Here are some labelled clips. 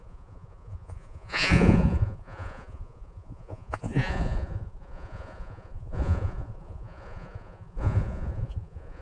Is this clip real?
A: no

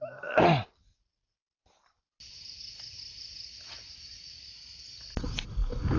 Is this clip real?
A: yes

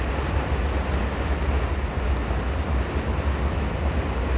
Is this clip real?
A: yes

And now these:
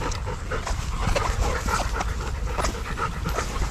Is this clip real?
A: yes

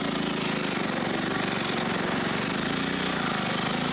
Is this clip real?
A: yes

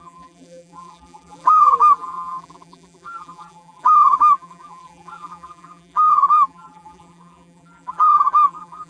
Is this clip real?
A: no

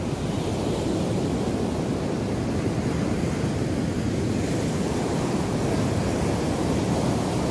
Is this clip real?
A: yes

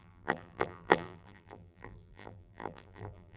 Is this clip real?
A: no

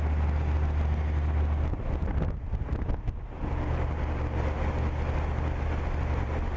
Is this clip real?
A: yes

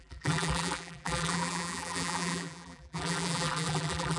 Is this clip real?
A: no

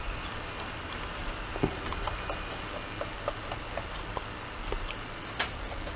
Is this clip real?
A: yes